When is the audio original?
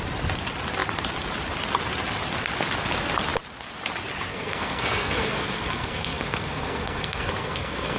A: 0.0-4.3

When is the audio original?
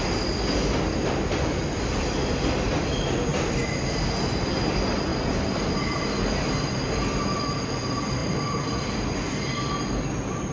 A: 0.0-1.0; 2.0-3.3; 3.9-5.1; 5.7-8.2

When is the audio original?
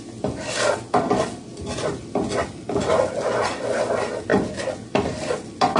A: 0.0-5.8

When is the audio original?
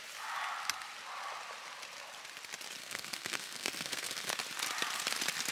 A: 0.0-2.8; 4.3-5.5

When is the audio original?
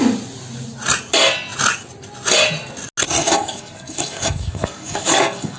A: 0.0-3.2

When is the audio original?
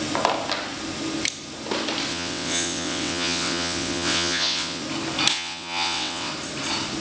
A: 0.0-2.1; 4.8-5.3; 6.3-7.0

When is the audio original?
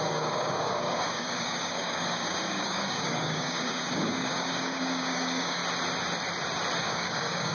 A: 5.6-6.8